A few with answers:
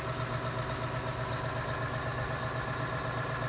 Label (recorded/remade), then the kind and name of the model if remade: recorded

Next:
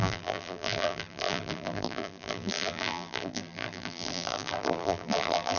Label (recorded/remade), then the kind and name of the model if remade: remade, vocoder, BigVGAN v2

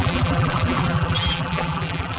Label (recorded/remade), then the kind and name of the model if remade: remade, vocoder, BigVGAN v2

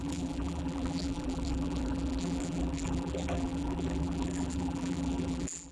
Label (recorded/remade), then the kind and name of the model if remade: remade, vocoder, BigVGAN v2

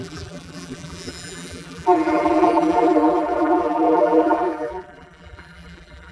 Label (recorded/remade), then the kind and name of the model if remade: remade, vocoder, BigVGAN v2